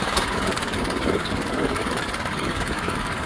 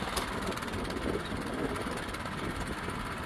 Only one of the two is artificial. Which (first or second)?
first